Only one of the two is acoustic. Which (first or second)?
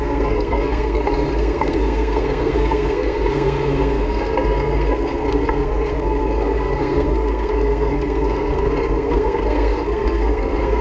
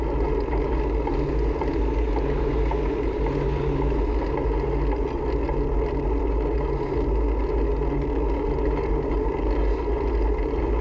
second